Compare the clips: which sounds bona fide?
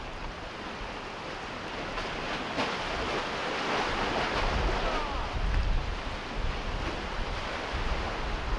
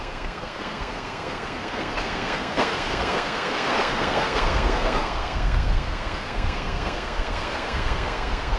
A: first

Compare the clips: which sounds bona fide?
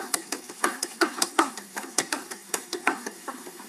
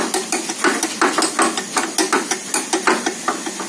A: second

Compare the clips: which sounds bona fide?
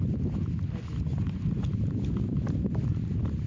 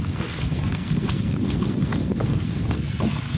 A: first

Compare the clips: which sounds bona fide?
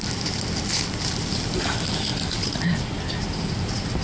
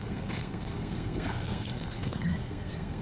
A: first